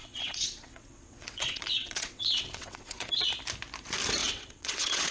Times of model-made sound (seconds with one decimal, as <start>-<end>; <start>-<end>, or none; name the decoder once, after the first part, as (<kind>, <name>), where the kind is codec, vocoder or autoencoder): 0.0-3.1 (vocoder, WaveNeXt); 4.2-5.1